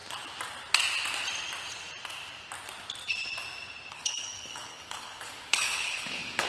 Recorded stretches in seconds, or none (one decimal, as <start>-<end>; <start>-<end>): 0.0-3.9